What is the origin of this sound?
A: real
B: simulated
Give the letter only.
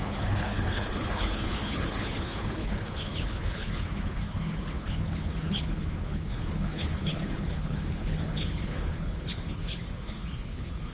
B